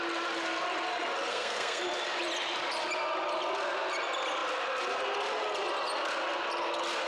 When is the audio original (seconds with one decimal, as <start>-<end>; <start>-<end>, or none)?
0.0-1.3; 1.8-7.1